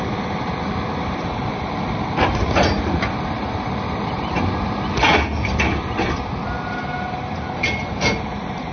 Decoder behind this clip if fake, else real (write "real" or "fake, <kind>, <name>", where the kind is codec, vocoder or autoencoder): real